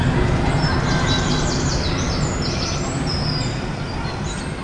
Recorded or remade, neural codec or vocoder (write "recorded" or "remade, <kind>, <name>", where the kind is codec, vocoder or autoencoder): recorded